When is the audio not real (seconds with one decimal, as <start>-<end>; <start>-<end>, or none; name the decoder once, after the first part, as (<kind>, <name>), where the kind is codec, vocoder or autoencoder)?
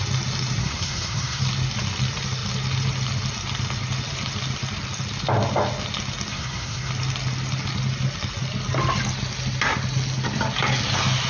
0.6-1.4 (codec, SNAC); 6.3-6.9